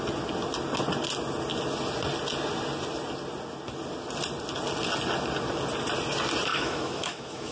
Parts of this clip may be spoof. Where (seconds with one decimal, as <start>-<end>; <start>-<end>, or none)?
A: 6.5-7.5